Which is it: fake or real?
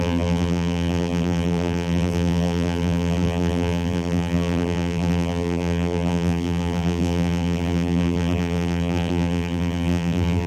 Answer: fake